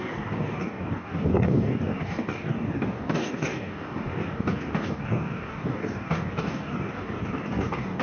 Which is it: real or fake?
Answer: fake